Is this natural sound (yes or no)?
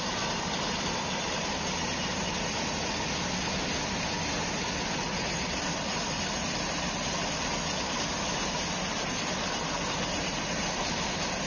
yes